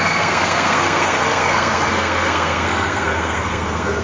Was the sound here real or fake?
fake